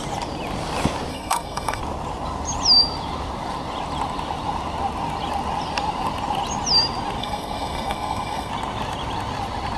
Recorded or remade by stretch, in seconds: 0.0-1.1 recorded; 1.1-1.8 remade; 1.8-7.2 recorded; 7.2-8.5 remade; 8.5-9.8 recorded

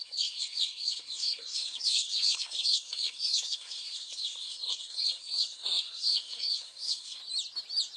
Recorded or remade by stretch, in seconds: 0.0-7.2 remade; 7.2-8.0 recorded